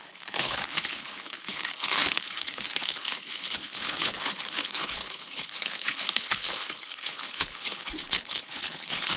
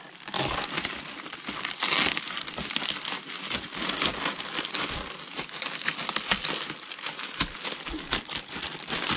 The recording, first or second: second